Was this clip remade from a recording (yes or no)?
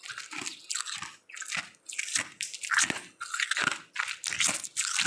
no